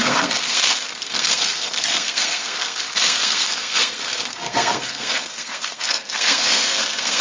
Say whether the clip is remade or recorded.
remade